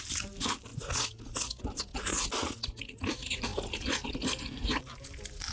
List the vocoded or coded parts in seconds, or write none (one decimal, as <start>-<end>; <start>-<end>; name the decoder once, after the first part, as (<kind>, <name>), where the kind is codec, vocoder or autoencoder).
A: 0.0-0.7 (vocoder, BigVGAN v2); 3.1-3.5; 4.4-5.5